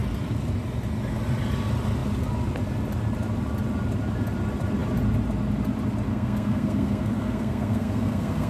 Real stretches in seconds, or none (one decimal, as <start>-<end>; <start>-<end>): 0.0-6.1